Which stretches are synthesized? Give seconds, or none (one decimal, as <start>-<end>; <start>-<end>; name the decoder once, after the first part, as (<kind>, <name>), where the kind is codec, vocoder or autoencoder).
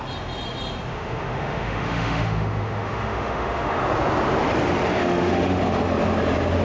0.9-3.8 (autoencoder, DAC-VAE); 5.0-5.6